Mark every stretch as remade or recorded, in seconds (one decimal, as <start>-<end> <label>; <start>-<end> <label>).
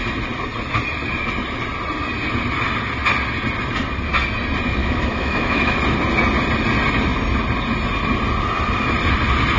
0.0-4.8 recorded; 4.8-5.7 remade; 5.7-9.6 recorded